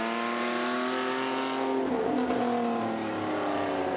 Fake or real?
real